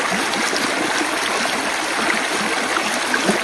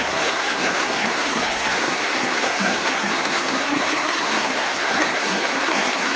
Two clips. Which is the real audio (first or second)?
first